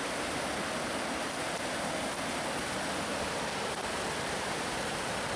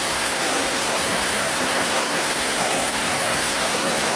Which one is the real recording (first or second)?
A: first